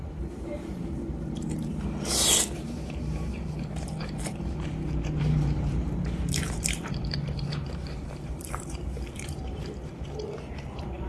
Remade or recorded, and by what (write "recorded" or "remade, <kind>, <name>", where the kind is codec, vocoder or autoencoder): remade, vocoder, BigVGAN v2